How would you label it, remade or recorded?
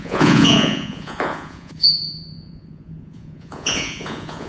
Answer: remade